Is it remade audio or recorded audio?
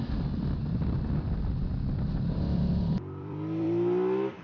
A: remade